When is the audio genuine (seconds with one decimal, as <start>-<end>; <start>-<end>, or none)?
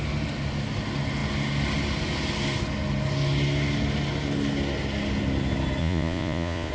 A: 0.0-5.8